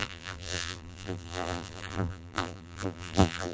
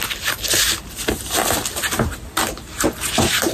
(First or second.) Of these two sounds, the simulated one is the first